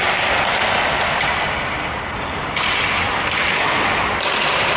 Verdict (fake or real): real